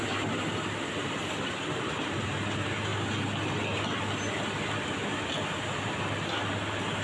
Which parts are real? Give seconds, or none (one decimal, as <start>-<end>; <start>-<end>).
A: 0.0-7.0